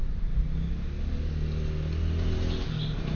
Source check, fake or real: real